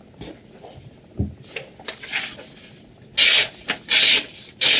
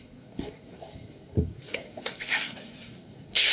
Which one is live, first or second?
first